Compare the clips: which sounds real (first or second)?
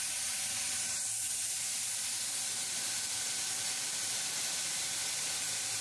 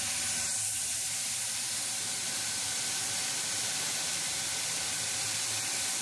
first